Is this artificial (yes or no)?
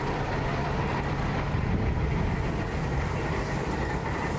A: yes